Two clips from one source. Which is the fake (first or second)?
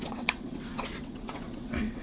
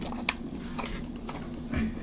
first